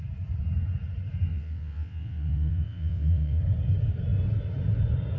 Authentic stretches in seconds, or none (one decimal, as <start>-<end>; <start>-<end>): 0.0-1.3; 3.4-5.2